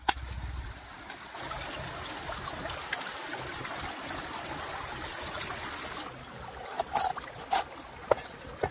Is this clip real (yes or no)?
yes